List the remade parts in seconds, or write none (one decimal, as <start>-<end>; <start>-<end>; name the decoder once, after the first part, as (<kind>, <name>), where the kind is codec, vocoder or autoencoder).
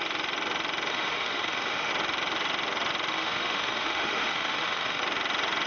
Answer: 0.9-1.9 (autoencoder, DAC-VAE); 3.1-5.0